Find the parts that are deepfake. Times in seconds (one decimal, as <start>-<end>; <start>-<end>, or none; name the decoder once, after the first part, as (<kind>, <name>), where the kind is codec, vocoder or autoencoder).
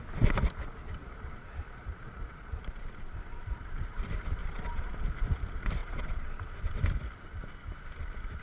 1.0-2.9 (vocoder, Vocos); 4.4-4.9; 5.8-6.7